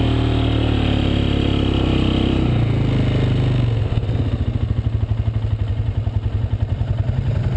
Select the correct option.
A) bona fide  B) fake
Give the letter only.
A